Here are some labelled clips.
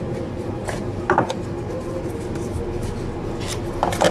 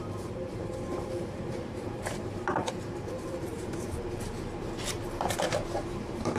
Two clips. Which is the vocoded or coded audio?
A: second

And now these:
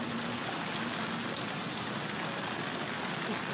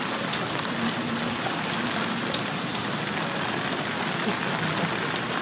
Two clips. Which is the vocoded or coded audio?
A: second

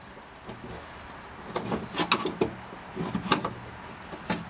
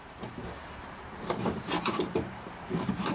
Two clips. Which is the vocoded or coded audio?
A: second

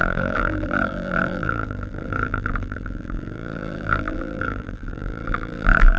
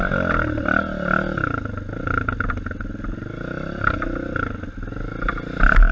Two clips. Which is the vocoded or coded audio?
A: first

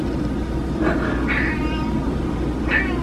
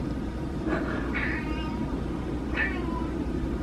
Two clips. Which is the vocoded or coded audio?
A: second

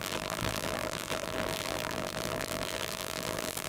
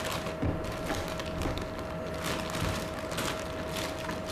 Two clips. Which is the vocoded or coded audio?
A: first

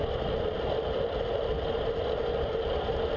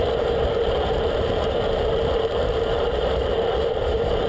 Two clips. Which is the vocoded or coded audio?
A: second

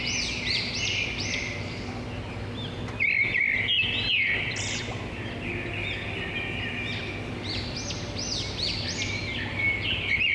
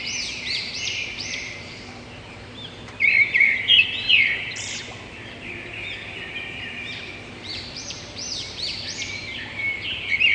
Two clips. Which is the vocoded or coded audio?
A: second